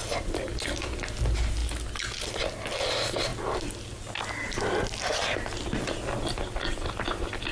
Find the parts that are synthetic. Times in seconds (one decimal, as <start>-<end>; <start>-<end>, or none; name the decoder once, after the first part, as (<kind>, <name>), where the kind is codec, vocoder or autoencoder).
none